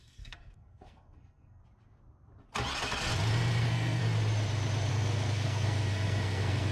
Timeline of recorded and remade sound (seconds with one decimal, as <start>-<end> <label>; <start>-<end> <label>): 0.0-1.6 remade; 1.6-3.6 recorded; 3.6-4.0 remade; 4.0-4.9 recorded; 4.9-6.7 remade